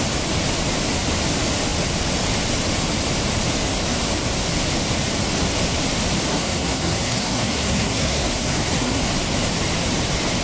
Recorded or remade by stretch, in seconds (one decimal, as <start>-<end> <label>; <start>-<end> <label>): 0.0-6.3 recorded; 6.3-9.0 remade; 9.0-10.4 recorded